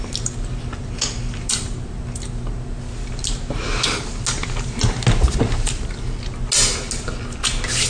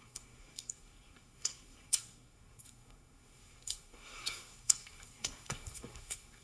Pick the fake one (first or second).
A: second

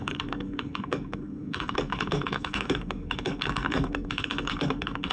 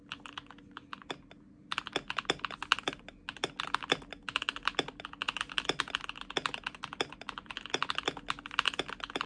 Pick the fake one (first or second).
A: first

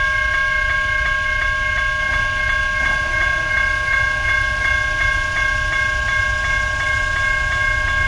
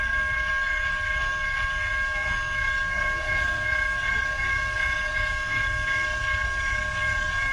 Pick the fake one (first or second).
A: second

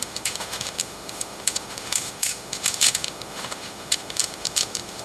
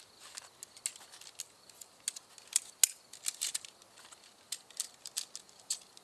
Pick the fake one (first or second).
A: first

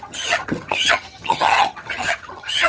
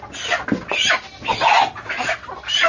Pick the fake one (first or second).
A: first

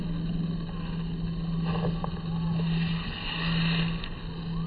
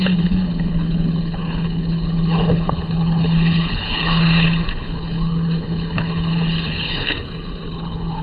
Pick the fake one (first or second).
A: second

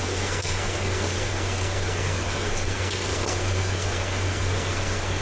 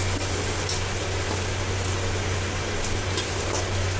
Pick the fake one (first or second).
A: first